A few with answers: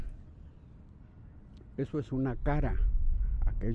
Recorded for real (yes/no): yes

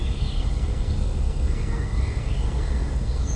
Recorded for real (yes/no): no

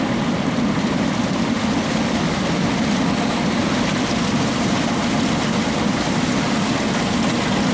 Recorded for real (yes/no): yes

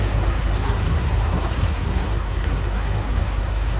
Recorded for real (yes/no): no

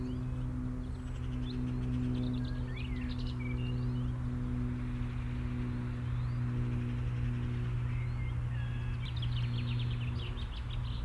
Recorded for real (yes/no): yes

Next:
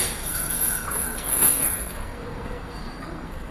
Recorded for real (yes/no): no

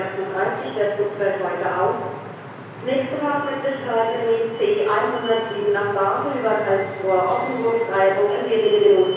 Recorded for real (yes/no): yes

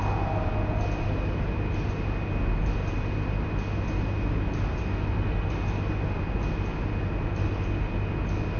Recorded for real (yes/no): yes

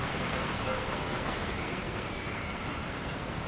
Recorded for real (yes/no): no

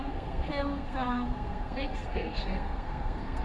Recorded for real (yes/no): no